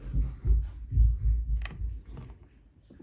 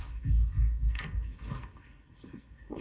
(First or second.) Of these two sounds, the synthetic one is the second